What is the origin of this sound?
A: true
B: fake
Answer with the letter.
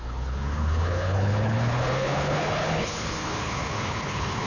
B